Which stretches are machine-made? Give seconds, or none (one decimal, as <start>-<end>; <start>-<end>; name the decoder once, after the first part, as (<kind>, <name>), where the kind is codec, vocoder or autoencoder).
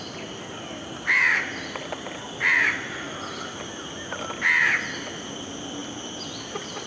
none